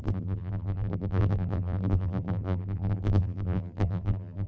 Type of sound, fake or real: fake